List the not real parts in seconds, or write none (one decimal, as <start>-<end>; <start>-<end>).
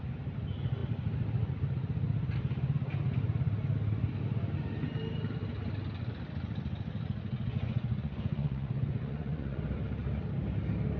7.5-9.6